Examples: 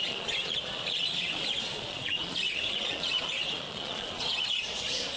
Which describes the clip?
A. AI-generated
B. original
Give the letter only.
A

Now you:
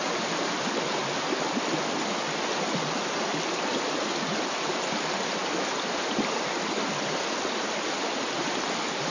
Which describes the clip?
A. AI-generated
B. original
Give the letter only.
B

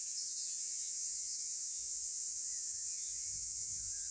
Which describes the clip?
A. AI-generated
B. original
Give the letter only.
A